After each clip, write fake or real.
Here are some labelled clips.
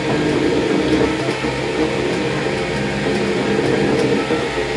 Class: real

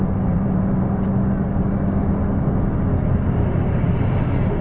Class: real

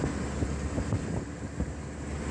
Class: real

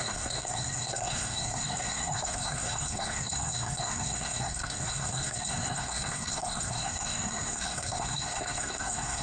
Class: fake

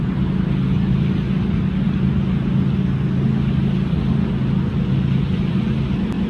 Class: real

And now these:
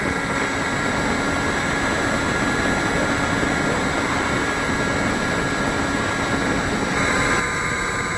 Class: real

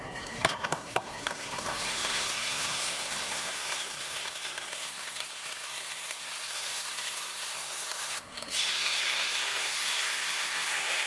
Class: fake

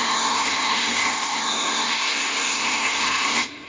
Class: fake